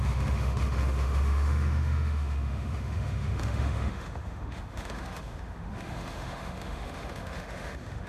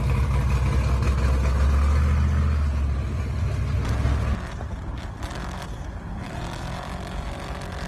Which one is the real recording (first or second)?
second